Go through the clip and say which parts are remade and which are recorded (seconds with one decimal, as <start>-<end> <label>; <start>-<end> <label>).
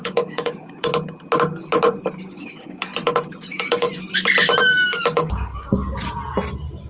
0.0-0.9 remade; 0.9-2.3 recorded; 2.3-2.9 remade; 2.9-3.5 recorded; 3.5-3.9 remade; 3.9-4.6 recorded; 4.6-5.8 remade; 5.8-6.9 recorded